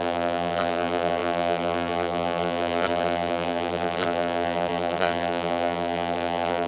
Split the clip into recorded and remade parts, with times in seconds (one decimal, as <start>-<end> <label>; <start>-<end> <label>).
0.0-6.7 remade

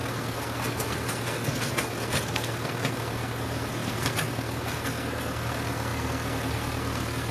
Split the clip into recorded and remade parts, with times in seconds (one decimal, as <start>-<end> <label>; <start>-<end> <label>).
0.0-7.3 remade

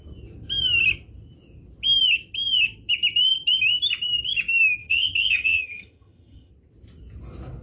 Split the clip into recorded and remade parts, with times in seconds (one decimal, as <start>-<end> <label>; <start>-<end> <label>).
0.0-4.8 recorded; 4.8-6.5 remade; 6.5-7.6 recorded

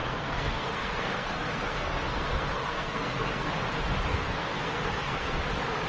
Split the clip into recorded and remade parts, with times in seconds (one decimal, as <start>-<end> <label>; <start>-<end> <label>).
0.0-3.5 remade; 3.5-4.1 recorded; 4.1-5.4 remade; 5.4-5.9 recorded

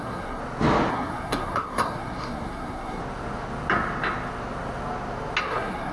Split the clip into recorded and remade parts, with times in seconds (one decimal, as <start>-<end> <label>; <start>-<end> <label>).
0.0-0.4 remade; 0.4-0.9 recorded; 0.9-3.0 remade; 3.0-5.4 recorded; 5.4-5.9 remade

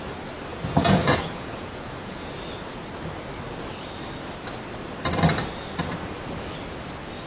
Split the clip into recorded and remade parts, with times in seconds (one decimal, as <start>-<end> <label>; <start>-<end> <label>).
0.0-0.5 recorded; 0.5-2.3 remade; 2.3-7.3 recorded

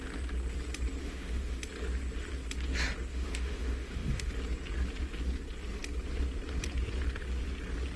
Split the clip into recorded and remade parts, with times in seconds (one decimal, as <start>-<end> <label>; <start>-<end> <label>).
0.0-1.0 recorded; 1.0-1.6 remade; 1.6-3.1 recorded; 3.1-4.3 remade; 4.3-8.0 recorded